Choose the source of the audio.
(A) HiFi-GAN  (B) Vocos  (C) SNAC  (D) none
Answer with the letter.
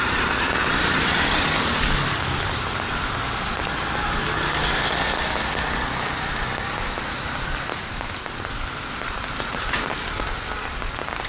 D